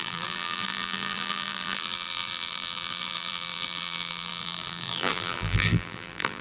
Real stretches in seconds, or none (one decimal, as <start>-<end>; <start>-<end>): none